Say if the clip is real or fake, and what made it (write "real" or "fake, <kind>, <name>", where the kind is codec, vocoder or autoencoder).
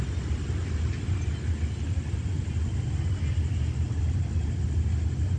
real